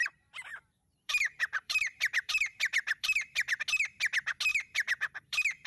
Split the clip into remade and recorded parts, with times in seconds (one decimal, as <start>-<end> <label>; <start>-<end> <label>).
0.0-0.5 recorded; 0.5-3.6 remade; 3.6-4.5 recorded; 4.5-5.7 remade